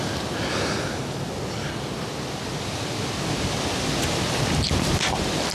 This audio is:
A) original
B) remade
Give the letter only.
A